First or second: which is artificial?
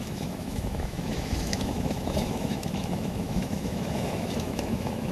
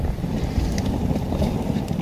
first